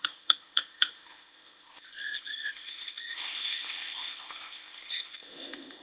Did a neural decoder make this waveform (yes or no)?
yes